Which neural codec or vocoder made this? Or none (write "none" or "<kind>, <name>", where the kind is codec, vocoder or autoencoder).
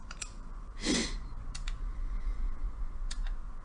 vocoder, Vocos